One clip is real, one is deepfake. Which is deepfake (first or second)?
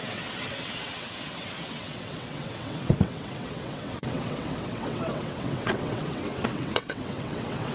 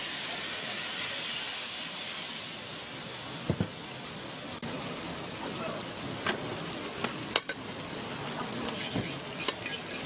first